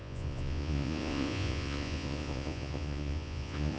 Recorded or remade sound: remade